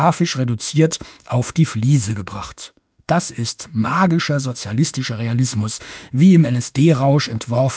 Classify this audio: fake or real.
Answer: fake